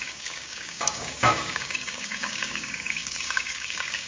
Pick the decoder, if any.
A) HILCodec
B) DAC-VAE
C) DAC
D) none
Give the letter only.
C